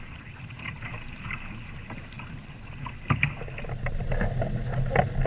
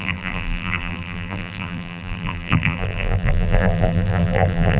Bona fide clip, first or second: first